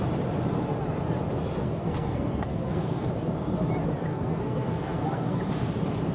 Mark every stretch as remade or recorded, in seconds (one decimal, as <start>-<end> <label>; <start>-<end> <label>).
0.0-1.6 recorded; 1.6-3.1 remade; 3.1-4.1 recorded; 4.1-5.4 remade; 5.4-6.1 recorded